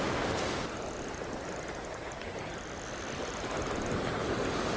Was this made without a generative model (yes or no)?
yes